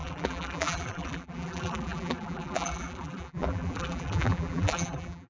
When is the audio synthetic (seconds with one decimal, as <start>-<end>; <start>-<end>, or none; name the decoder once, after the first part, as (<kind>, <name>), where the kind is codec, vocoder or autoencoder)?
0.0-5.3 (vocoder, BigVGAN v2)